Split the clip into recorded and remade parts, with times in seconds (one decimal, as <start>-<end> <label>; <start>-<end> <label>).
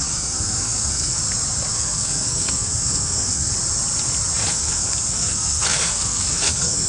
0.0-1.2 remade; 1.2-1.7 recorded; 1.7-3.5 remade; 3.5-4.5 recorded; 4.5-6.9 remade